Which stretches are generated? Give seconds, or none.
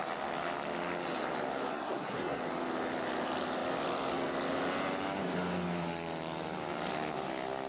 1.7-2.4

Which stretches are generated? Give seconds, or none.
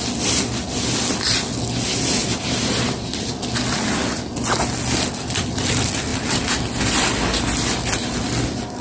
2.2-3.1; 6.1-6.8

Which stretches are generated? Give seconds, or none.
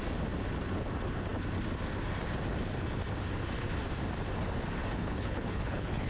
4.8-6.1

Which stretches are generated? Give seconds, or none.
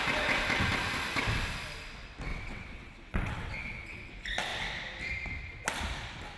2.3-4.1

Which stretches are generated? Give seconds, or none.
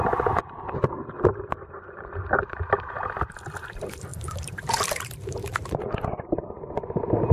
1.3-2.1; 4.1-6.1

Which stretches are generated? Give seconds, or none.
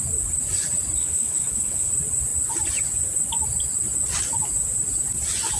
1.0-1.9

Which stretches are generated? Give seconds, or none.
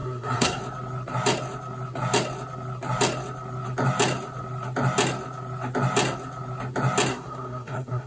0.0-0.6; 7.1-8.1